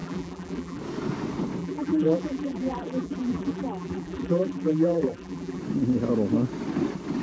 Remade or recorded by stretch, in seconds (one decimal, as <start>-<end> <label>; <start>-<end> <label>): 0.0-0.8 remade; 0.8-1.6 recorded; 1.6-5.6 remade; 5.6-7.2 recorded